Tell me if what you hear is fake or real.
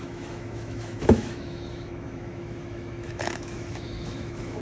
fake